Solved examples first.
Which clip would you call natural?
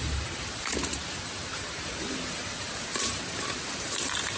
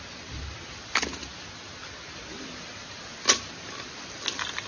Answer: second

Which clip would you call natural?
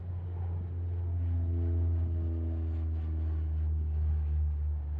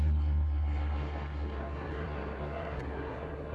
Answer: first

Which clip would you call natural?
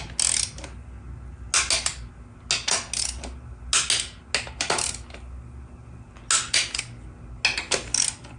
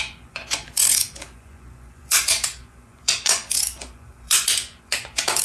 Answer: first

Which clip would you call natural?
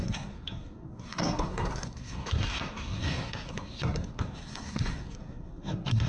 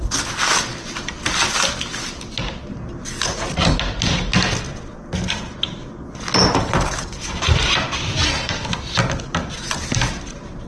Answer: second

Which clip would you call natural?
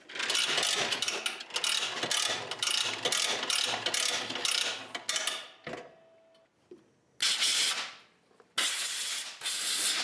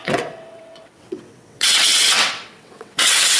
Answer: first